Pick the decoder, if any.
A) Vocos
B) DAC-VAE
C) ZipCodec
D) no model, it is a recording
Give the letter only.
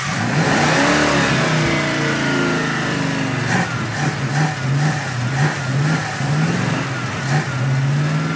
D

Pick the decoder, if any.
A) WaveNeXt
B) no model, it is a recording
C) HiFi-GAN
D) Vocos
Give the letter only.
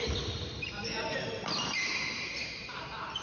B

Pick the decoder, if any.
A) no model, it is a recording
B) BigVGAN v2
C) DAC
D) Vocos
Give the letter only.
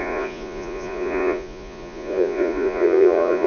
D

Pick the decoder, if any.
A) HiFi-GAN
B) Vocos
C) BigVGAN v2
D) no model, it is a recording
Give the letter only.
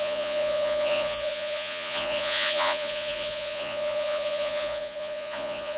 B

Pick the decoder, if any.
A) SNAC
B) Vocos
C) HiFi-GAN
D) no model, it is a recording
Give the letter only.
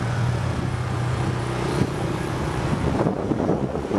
B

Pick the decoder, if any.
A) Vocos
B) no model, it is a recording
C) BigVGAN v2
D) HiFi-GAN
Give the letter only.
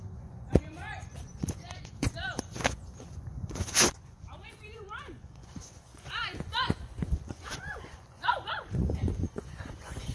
A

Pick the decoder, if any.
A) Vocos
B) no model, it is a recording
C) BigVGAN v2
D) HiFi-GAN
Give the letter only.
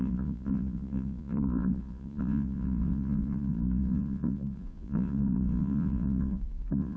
A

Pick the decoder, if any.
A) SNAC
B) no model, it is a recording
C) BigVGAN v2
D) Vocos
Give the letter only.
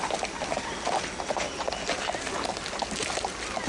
B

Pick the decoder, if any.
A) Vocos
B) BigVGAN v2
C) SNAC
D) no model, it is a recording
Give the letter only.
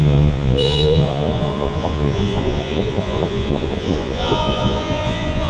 A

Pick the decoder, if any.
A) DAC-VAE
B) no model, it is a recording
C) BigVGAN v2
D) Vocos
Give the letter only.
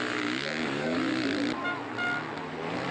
B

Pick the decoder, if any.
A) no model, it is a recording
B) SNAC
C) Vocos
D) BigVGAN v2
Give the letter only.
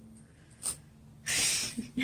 A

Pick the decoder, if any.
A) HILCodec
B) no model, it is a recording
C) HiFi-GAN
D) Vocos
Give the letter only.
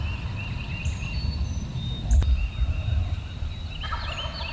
B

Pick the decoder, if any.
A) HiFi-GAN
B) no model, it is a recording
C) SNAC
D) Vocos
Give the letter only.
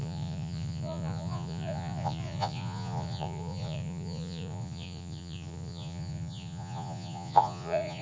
D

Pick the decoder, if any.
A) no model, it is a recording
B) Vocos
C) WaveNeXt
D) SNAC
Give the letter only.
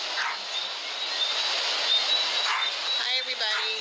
A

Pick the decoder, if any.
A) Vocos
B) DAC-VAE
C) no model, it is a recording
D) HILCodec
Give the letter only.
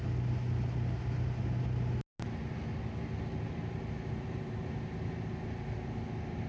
C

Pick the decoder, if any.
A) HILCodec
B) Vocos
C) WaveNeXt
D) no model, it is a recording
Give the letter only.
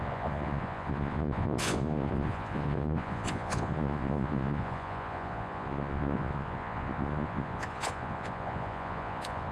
B